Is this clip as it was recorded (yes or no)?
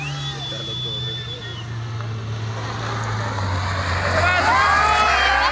yes